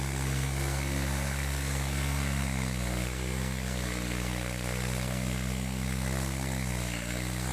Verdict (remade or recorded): remade